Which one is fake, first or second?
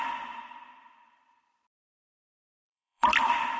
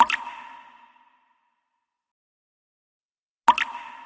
first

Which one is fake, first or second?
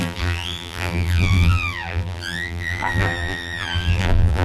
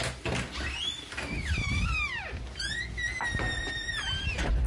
first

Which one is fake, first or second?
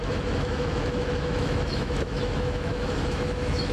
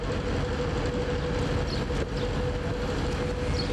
first